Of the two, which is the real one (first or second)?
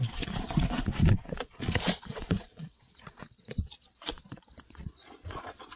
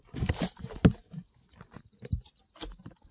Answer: second